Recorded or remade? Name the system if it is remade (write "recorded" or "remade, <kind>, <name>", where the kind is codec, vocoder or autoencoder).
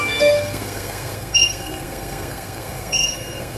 remade, codec, SNAC